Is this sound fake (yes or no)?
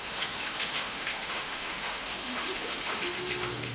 yes